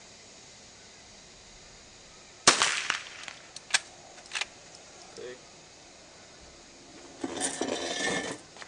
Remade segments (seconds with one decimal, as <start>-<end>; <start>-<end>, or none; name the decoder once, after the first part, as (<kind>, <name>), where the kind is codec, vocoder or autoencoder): 4.6-5.1 (vocoder, BigVGAN v2)